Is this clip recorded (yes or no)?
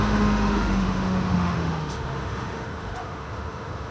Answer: no